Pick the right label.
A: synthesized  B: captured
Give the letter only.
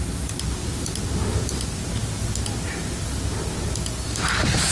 B